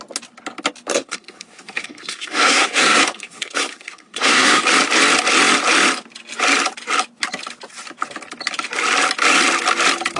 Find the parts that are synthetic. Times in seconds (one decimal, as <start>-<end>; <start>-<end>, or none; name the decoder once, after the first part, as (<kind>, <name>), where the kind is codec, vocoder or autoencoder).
0.9-4.6 (codec, SNAC)